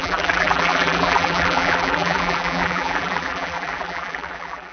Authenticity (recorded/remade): remade